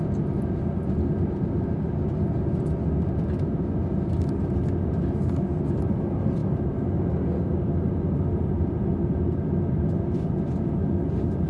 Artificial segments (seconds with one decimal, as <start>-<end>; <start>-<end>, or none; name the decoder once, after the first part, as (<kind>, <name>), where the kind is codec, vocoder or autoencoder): none